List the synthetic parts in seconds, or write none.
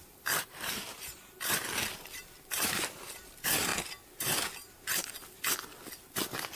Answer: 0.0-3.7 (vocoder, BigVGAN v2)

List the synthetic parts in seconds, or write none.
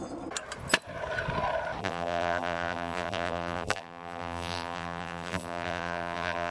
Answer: 1.8-6.5 (vocoder, BigVGAN v2)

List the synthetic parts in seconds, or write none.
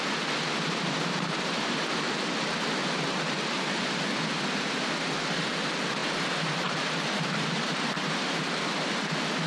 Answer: 6.0-8.4 (vocoder, BigVGAN v2)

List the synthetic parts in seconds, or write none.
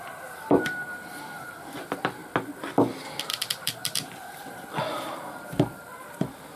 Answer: 0.0-2.2 (vocoder, BigVGAN v2); 3.2-6.6